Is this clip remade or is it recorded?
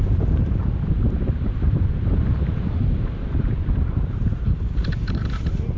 remade